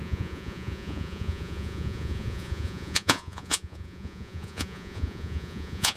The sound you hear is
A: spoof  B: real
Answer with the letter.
A